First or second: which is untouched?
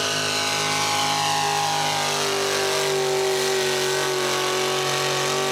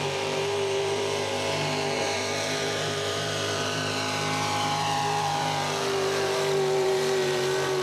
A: first